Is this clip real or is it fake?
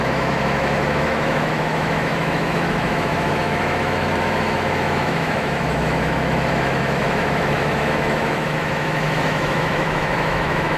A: fake